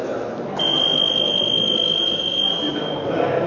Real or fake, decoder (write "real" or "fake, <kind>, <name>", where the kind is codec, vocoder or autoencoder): real